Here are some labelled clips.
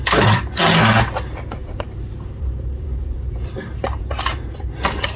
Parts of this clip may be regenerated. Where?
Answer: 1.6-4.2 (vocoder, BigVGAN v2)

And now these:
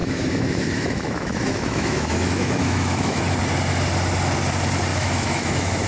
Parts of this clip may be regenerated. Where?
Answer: 0.0-3.2 (autoencoder, DAC-VAE); 4.9-5.9